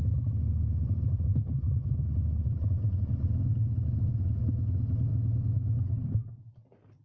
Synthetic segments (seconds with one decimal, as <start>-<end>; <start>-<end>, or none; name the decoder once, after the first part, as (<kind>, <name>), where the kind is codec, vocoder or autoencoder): none